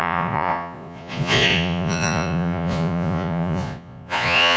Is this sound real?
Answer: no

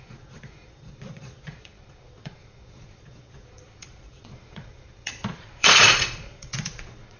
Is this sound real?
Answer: no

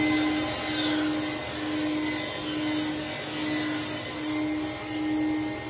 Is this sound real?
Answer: yes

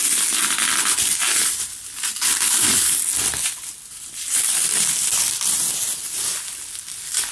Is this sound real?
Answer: yes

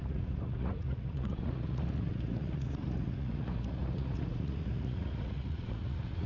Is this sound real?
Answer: no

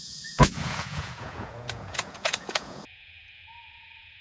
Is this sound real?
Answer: no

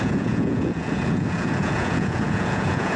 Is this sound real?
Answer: no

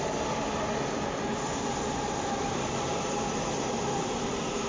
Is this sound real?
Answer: yes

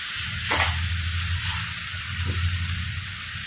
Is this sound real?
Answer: yes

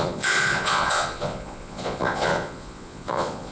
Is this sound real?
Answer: no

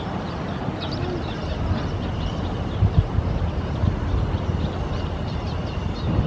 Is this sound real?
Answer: yes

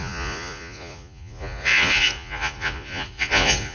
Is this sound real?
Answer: no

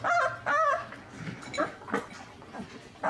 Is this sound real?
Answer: yes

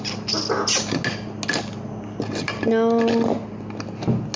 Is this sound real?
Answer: yes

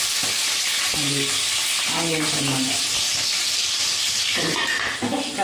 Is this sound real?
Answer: yes